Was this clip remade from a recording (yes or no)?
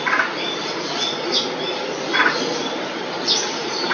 no